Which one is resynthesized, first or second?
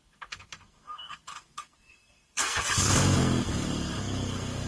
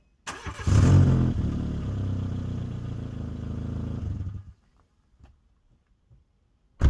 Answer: first